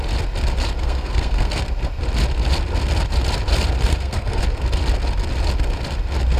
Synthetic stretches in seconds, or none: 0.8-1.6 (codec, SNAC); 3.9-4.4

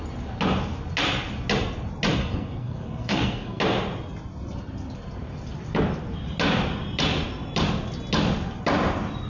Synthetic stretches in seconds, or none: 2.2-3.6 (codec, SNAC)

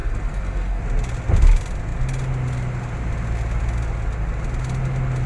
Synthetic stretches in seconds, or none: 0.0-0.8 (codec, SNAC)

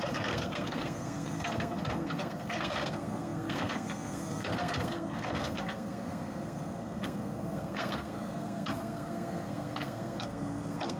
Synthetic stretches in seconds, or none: 0.0-11.0 (codec, SNAC)

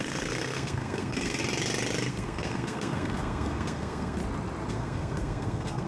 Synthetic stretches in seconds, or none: 0.0-1.4 (codec, SNAC); 2.1-4.2; 4.7-5.9